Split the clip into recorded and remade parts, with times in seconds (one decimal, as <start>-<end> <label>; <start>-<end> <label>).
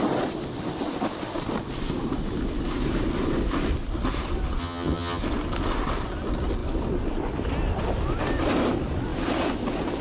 0.0-4.6 recorded; 4.6-5.2 remade; 5.2-10.0 recorded